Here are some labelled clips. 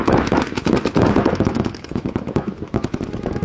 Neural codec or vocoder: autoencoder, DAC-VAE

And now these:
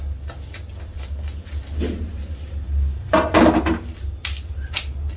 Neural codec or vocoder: none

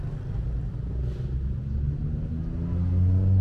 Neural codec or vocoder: none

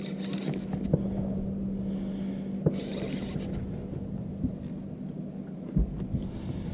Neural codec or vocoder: none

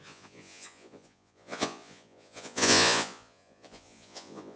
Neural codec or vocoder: vocoder, Vocos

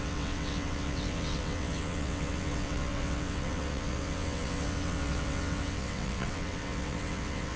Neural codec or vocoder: vocoder, WaveNeXt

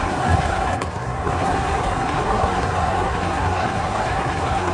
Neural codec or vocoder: codec, SNAC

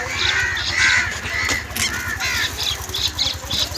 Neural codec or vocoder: none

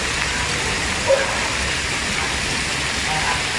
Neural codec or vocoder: none